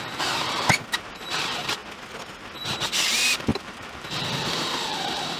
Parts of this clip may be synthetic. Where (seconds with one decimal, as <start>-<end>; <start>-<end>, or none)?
0.0-1.8; 3.1-5.4